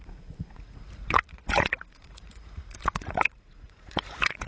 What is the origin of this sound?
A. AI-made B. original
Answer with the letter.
A